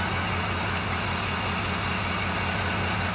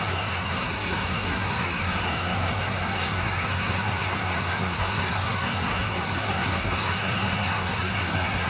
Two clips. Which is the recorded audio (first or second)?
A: first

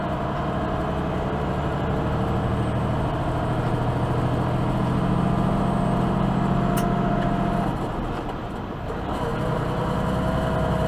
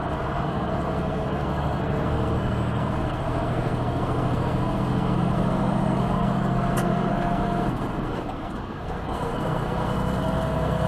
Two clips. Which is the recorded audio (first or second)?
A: first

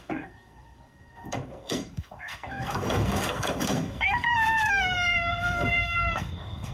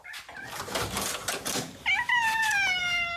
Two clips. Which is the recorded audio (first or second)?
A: second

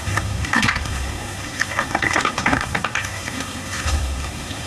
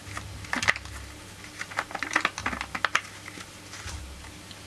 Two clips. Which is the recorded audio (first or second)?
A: second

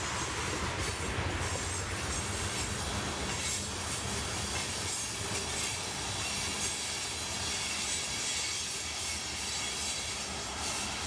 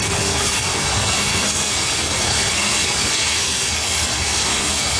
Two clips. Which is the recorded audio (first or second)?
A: first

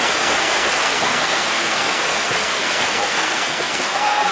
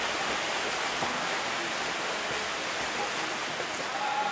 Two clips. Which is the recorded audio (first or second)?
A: second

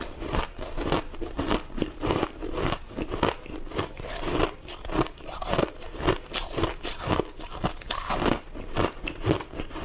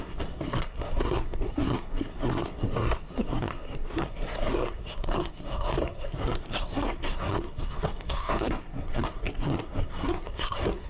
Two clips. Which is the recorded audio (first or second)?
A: first